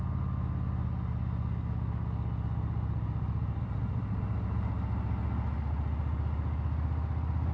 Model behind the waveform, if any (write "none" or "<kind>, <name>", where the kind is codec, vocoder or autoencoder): none